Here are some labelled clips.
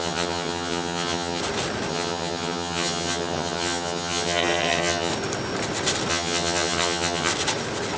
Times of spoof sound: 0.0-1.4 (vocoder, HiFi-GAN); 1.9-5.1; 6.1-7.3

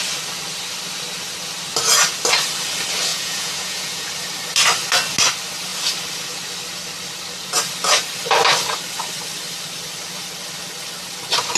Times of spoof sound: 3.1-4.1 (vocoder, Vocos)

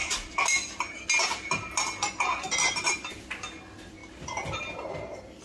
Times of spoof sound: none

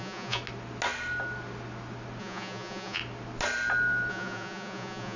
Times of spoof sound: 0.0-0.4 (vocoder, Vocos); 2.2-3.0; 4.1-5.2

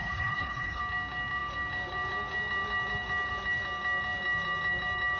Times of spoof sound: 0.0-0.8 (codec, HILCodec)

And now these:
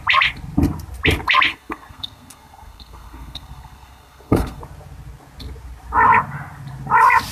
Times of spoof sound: 1.5-4.6 (codec, SNAC)

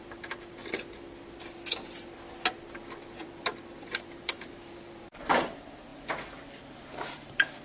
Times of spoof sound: 0.0-0.6 (vocoder, BigVGAN v2); 3.8-5.9; 6.6-7.6